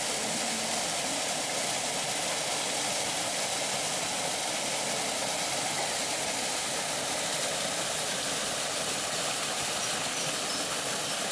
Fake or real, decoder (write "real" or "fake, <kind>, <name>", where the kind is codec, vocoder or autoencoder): real